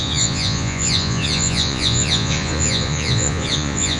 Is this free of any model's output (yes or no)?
no